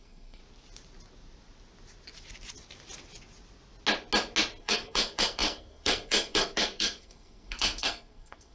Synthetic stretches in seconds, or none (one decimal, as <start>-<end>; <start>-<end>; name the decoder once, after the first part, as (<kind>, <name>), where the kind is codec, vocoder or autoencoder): 0.0-0.4 (codec, SNAC); 4.6-8.5